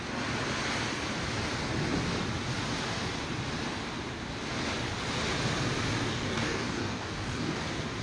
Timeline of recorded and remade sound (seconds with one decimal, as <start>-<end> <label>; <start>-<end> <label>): 0.0-6.1 recorded; 6.1-7.6 remade; 7.6-8.0 recorded